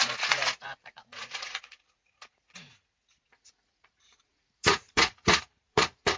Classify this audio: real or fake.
fake